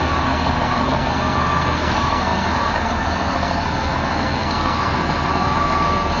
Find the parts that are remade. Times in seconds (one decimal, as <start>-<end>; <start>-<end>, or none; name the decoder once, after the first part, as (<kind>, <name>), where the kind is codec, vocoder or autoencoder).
0.0-6.2 (codec, SNAC)